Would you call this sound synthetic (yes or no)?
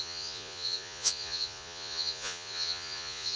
yes